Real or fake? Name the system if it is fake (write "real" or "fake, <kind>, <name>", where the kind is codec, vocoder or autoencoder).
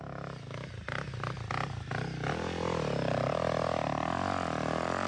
real